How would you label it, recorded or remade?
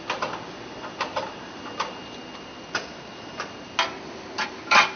recorded